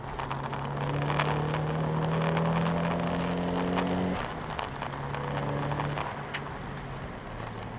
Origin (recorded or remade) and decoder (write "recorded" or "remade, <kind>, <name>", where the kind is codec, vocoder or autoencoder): recorded